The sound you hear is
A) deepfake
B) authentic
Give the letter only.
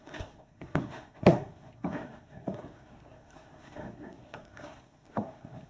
A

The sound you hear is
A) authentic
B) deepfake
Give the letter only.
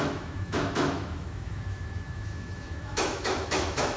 B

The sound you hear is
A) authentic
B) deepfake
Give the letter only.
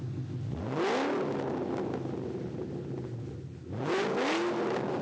A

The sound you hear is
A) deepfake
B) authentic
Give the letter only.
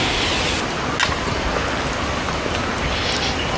B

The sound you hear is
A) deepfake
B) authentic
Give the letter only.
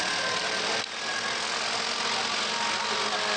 B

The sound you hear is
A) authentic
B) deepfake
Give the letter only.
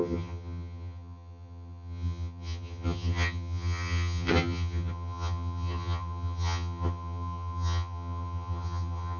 B